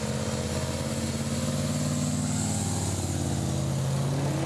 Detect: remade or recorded recorded